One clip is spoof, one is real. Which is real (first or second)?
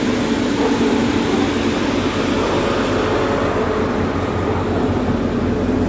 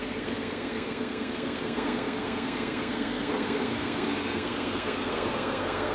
first